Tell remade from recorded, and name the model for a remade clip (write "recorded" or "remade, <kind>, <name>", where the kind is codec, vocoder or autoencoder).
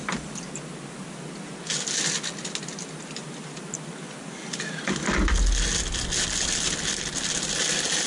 recorded